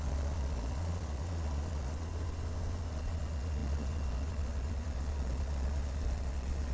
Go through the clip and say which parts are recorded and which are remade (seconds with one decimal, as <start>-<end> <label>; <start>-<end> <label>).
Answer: 0.0-2.1 remade; 2.1-2.9 recorded; 2.9-6.7 remade